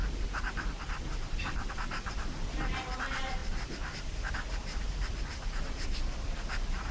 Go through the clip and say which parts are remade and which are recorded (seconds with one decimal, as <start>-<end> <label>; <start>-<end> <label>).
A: 0.0-6.9 remade